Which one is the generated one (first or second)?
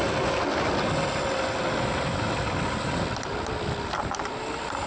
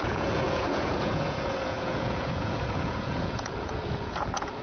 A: second